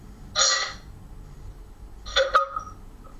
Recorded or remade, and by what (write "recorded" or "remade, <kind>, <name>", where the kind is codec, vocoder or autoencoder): recorded